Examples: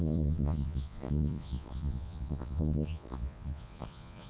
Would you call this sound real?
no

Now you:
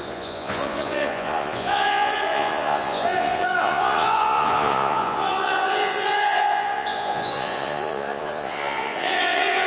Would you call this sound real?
no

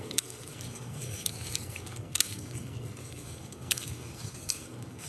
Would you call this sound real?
no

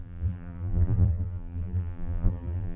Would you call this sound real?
no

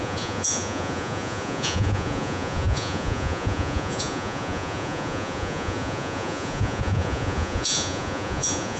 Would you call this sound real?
no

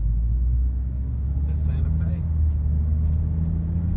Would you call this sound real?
yes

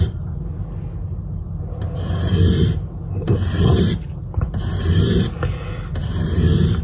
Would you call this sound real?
yes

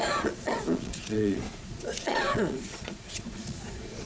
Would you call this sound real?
no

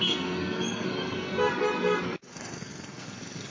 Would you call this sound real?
no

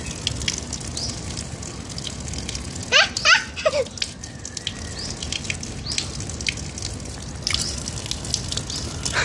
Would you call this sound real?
yes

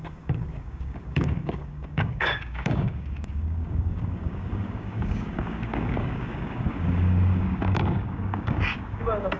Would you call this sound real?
no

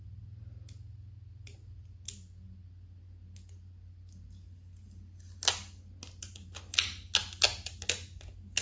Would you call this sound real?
yes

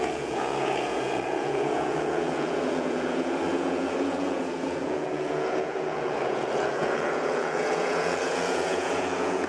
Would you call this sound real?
no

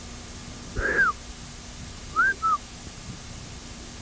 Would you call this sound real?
yes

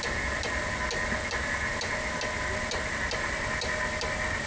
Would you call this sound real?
yes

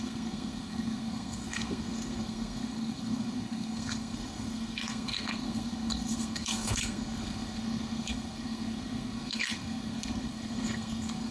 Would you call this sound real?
no